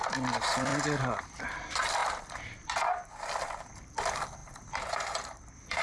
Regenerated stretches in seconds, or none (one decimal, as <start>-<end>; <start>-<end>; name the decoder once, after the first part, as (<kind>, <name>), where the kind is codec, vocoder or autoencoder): 0.0-0.7 (vocoder, BigVGAN v2); 1.2-2.0; 3.7-4.4; 5.3-5.8